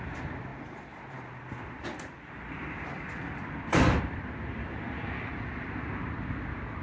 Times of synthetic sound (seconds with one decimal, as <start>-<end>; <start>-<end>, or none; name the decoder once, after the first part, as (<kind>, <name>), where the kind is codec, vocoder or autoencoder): 0.0-6.8 (vocoder, BigVGAN v2)

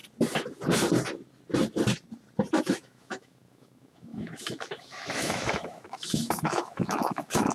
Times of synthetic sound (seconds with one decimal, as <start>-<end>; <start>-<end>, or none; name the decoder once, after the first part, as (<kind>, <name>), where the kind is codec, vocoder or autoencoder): 2.6-7.5 (autoencoder, DAC-VAE)

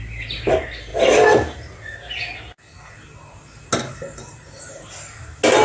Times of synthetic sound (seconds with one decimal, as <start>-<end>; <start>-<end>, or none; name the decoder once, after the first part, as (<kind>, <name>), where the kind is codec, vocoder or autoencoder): none